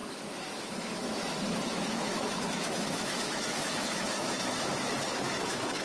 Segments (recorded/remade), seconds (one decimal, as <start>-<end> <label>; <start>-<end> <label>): 0.0-5.8 remade